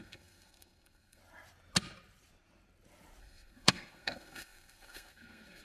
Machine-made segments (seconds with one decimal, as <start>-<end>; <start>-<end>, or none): 0.0-1.2; 3.2-5.6